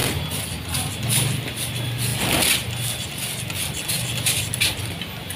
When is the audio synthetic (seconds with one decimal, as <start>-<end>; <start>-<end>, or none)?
1.0-2.1; 3.9-5.4